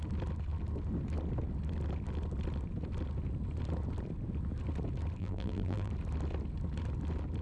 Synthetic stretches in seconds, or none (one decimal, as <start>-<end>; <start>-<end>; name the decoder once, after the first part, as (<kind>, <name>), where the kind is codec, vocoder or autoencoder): 5.2-5.9 (vocoder, BigVGAN v2)